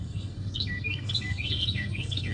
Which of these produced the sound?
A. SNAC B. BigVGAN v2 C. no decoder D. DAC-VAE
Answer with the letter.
A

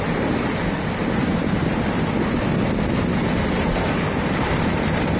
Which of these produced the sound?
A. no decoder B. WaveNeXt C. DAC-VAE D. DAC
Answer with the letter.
A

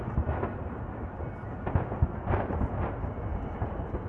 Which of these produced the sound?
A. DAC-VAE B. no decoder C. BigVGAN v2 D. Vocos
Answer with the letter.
B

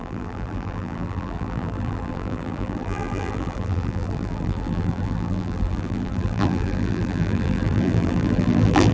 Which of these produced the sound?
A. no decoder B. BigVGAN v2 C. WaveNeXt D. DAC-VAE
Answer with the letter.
B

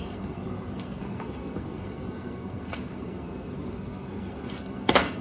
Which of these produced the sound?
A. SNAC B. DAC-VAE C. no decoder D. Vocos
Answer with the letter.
A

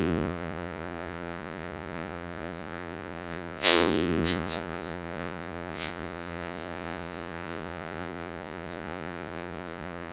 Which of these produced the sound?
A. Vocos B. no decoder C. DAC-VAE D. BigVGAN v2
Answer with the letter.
A